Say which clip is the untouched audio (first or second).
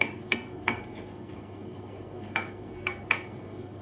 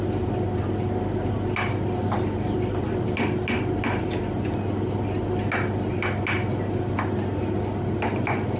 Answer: second